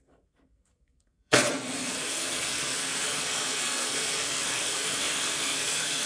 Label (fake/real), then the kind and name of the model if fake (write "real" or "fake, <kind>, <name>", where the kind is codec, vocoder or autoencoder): fake, codec, SNAC